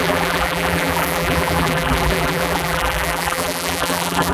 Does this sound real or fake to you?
fake